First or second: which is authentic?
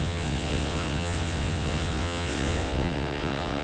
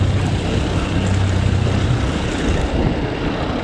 second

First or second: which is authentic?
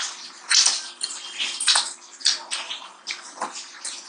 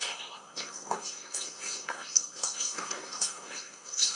first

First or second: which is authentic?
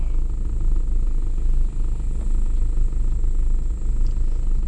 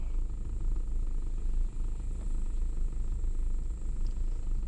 first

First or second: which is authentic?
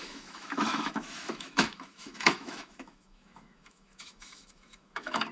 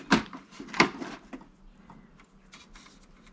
second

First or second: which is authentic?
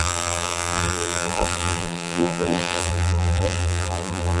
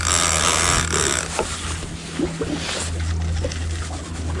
second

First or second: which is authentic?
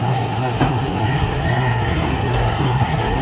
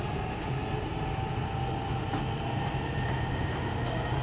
second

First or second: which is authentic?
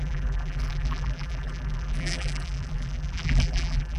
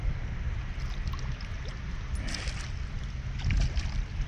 second